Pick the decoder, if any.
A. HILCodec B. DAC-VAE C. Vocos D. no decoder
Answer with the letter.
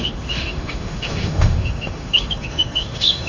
B